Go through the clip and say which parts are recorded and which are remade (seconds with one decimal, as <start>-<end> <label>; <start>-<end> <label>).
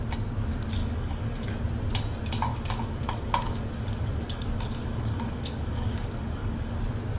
0.0-0.8 recorded; 0.8-1.6 remade; 1.6-2.5 recorded; 2.5-6.8 remade; 6.8-7.2 recorded